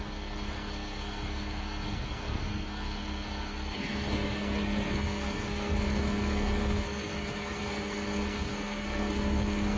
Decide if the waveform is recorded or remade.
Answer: remade